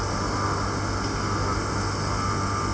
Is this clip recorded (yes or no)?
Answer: yes